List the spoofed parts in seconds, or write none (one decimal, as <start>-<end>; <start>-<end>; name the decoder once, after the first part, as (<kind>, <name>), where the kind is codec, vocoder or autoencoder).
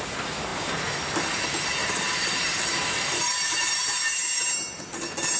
1.8-4.8 (vocoder, BigVGAN v2)